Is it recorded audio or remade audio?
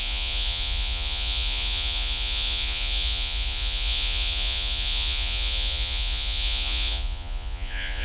remade